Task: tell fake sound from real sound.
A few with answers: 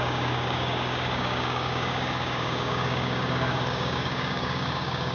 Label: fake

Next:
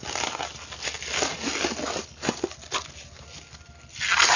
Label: real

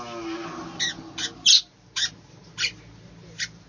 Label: real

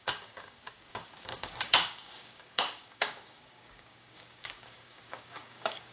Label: fake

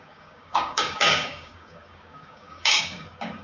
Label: fake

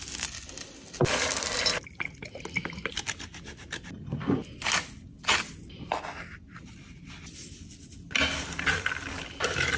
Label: real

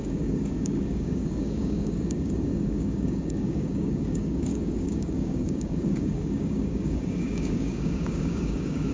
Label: fake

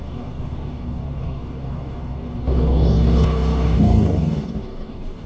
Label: fake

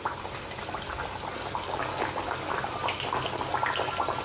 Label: real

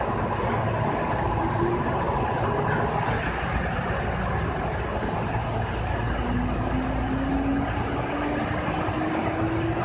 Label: real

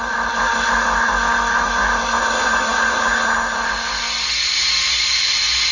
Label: real